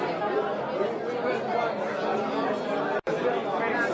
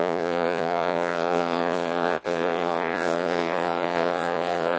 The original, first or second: first